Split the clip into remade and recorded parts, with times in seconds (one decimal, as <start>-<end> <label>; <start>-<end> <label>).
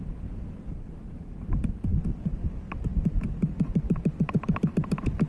0.0-5.3 recorded